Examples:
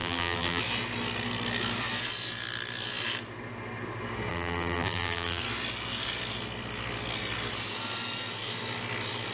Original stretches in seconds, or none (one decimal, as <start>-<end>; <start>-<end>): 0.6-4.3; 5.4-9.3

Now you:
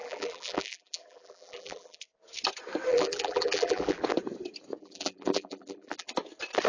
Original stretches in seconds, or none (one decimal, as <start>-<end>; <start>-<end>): 2.0-2.9; 4.0-4.8; 6.1-6.7

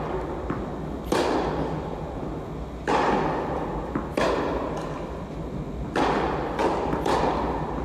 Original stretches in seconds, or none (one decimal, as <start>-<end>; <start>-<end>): 0.0-4.1; 4.9-6.6; 7.2-7.8

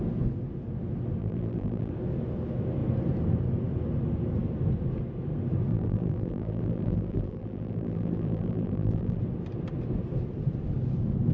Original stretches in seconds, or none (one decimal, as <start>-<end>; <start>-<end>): 0.0-1.2; 1.9-5.7; 9.2-11.3

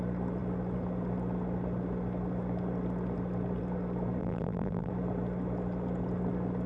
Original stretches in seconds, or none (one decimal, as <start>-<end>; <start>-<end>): 0.0-4.2; 4.9-6.7

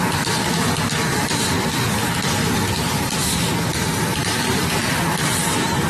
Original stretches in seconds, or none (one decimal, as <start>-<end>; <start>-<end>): 0.0-1.1; 1.8-3.9; 4.8-5.9

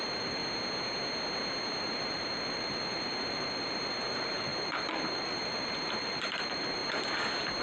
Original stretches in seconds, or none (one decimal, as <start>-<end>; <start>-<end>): 0.4-1.8; 6.8-7.6

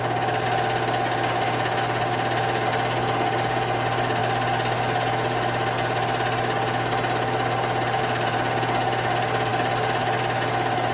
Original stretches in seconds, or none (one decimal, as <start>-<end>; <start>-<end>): 0.0-10.9